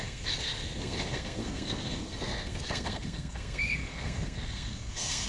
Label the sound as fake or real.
fake